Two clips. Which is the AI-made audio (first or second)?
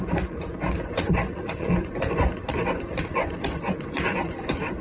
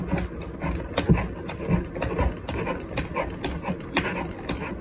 first